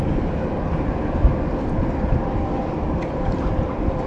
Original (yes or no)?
yes